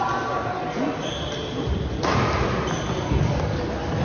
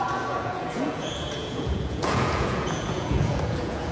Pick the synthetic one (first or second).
second